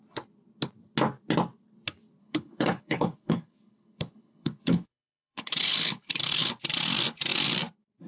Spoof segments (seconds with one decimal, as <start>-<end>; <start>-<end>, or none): 2.2-6.5